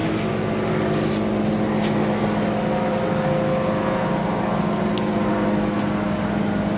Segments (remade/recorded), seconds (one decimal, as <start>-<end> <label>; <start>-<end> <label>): 0.0-6.8 recorded